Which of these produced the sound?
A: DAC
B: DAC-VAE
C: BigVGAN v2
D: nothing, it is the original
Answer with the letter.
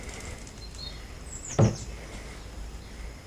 D